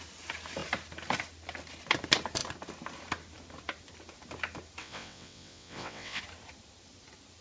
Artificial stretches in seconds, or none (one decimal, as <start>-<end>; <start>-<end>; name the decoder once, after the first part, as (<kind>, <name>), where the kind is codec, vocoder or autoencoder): 4.8-6.2 (vocoder, WaveNeXt)